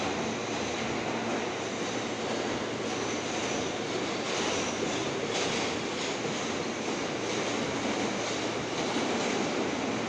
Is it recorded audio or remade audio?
recorded